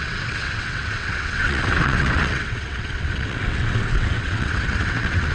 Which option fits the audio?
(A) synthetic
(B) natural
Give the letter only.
A